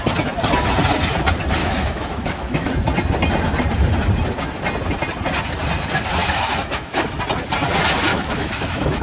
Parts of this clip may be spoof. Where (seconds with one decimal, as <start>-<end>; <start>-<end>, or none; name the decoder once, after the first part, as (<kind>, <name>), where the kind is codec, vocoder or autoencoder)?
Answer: 1.6-2.7 (autoencoder, DAC-VAE); 6.2-7.2; 8.1-9.0